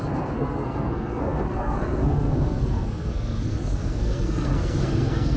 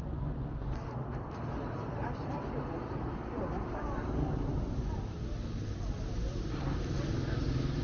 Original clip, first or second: second